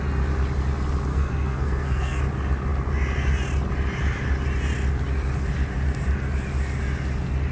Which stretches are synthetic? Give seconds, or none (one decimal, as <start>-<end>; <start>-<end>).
1.1-2.2